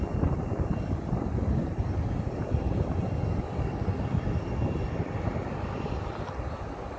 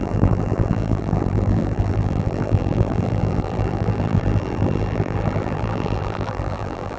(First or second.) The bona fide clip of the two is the first